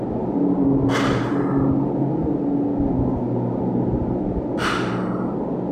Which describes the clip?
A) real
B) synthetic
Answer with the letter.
A